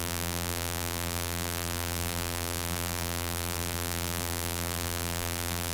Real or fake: fake